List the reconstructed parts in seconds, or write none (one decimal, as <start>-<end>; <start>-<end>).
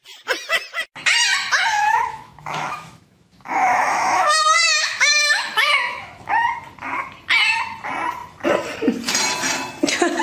1.7-6.3